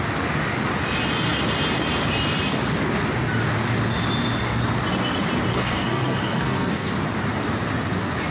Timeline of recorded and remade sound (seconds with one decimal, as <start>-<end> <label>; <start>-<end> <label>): 0.0-5.5 recorded; 5.5-6.9 remade; 6.9-8.3 recorded